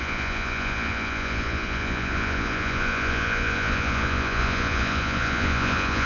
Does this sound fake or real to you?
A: fake